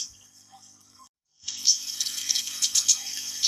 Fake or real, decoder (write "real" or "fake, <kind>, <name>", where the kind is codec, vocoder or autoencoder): fake, codec, SNAC